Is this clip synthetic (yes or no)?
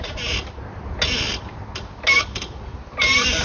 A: no